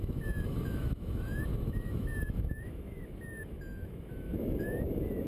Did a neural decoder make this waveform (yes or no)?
yes